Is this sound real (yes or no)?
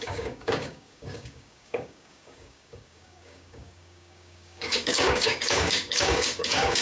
no